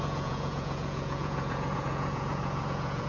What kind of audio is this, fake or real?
fake